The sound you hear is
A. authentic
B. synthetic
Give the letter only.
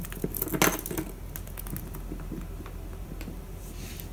A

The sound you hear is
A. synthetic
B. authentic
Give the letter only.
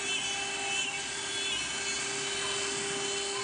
B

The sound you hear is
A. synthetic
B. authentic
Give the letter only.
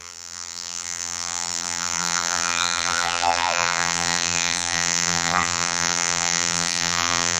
A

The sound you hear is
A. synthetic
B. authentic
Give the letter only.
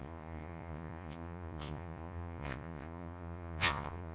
A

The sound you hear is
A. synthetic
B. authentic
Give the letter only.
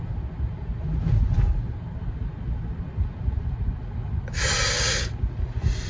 B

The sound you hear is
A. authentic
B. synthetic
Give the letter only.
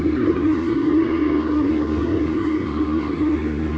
B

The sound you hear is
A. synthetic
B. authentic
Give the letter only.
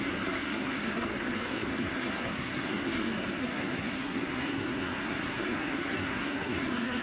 A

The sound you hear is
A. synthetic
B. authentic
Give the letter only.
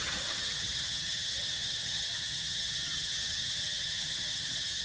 A